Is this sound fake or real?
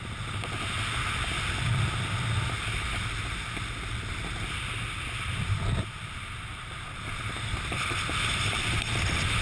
real